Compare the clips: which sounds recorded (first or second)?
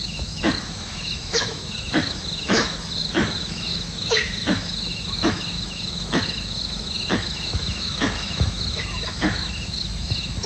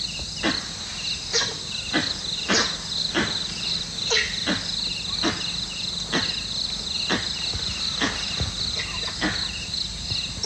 second